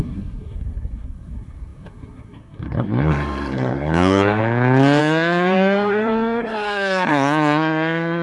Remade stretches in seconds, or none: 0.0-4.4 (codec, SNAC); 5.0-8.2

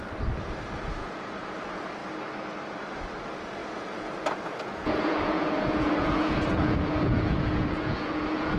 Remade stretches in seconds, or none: 1.0-1.6 (vocoder, Vocos); 3.6-8.6

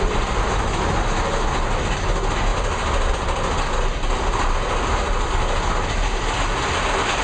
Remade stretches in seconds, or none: none

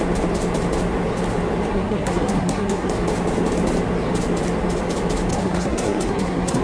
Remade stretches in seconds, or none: 1.7-2.9 (codec, SNAC); 5.3-6.6

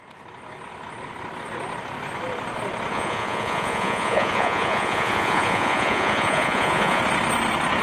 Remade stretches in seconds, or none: 2.9-7.0 (vocoder, Vocos)

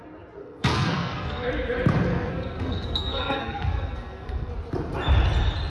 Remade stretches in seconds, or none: 0.4-1.5 (codec, SNAC); 2.1-4.5

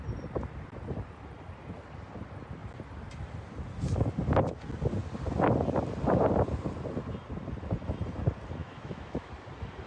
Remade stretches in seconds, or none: 8.6-9.3 (autoencoder, DAC-VAE)

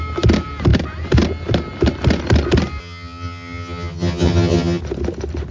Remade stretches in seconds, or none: 2.8-4.8 (vocoder, HiFi-GAN)